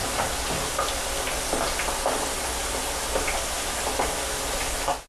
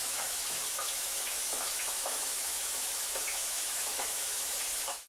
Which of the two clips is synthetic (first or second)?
second